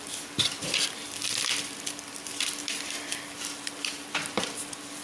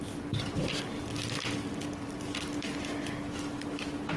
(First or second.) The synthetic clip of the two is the first